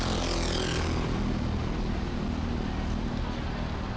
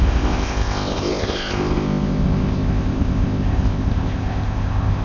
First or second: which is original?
first